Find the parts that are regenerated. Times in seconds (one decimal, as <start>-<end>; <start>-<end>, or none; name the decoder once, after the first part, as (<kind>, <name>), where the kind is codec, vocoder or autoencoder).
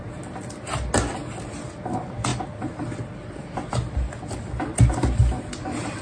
none